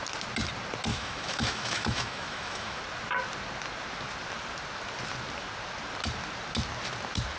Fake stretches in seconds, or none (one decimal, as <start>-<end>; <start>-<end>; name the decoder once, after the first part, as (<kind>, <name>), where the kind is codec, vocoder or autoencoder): 0.9-2.8 (autoencoder, DAC-VAE)